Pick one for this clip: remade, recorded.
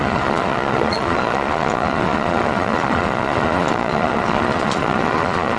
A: remade